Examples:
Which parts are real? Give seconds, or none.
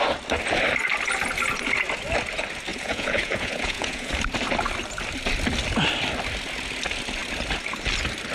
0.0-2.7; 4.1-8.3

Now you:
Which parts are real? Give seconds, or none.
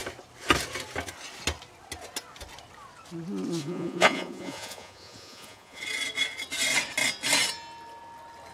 0.0-3.6; 5.8-8.5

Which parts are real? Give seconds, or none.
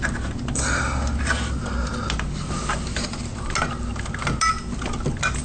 0.0-5.4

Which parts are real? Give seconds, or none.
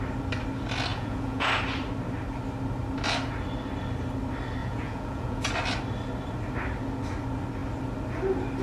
0.0-0.9; 1.5-4.6; 5.5-8.6